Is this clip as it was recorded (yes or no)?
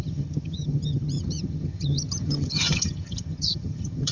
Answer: no